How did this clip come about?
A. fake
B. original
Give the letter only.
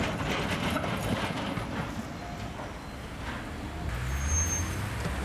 B